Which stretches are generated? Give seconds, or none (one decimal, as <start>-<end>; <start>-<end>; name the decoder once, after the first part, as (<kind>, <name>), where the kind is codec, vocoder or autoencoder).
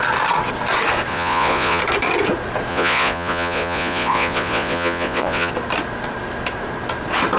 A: 1.1-1.8 (vocoder, Vocos); 2.7-5.5